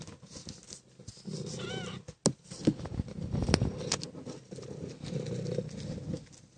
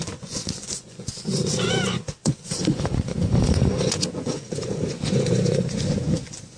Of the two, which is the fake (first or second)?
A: second